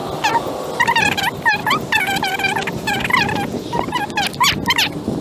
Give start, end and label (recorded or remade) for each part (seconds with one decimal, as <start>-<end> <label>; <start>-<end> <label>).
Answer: 0.0-1.6 recorded; 1.6-3.2 remade; 3.2-5.2 recorded